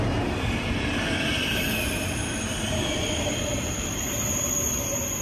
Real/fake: real